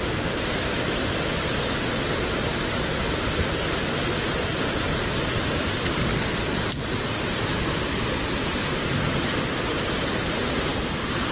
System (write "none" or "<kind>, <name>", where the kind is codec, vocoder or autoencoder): none